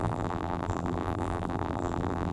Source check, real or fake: fake